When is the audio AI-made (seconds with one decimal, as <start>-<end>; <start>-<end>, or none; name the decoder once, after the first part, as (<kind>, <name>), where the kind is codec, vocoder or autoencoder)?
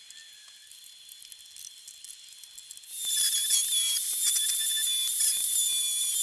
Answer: none